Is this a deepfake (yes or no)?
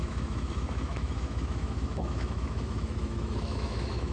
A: yes